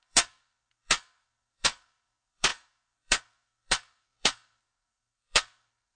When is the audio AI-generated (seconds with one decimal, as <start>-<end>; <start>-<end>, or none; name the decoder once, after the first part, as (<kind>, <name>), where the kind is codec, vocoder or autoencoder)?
0.0-6.0 (codec, SNAC)